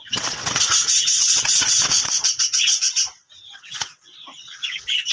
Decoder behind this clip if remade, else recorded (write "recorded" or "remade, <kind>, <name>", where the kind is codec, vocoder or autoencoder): remade, vocoder, WaveNeXt